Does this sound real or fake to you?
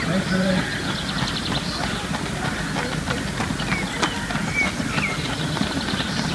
real